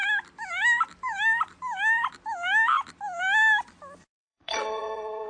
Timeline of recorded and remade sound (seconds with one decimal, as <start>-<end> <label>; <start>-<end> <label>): 0.0-4.0 recorded; 4.0-5.3 remade